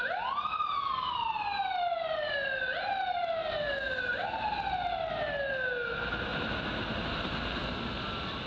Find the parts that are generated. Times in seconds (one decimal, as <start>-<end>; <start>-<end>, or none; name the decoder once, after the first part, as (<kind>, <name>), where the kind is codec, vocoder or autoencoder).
1.5-3.0 (vocoder, BigVGAN v2)